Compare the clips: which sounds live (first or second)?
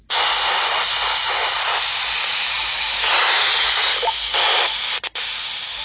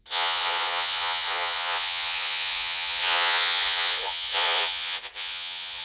first